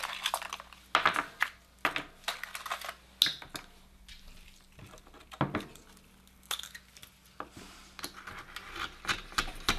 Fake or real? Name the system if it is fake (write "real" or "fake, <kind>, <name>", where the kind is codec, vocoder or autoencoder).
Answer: real